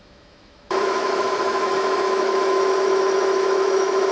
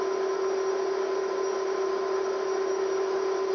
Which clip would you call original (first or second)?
second